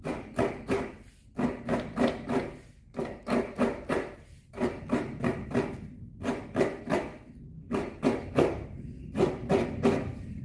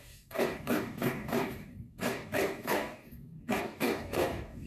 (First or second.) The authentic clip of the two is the first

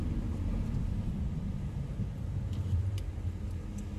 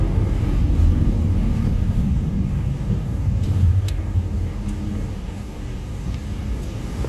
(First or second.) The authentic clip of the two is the first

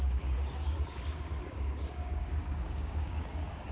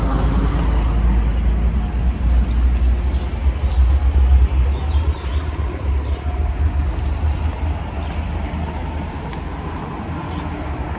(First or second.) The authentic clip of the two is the second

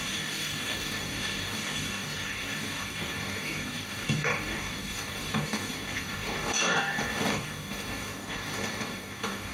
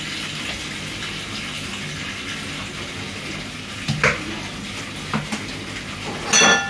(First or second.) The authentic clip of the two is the second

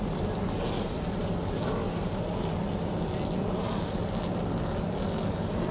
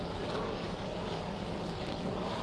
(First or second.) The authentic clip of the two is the first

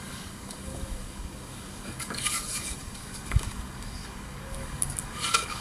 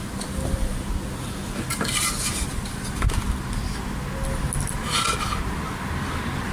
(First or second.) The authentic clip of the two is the second